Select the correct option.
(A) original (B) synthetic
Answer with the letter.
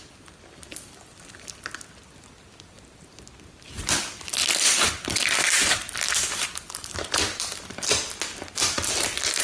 A